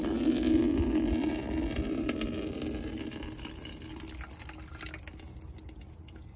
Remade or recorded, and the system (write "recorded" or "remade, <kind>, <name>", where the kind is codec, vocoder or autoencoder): recorded